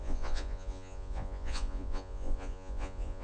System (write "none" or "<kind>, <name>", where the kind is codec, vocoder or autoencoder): vocoder, Vocos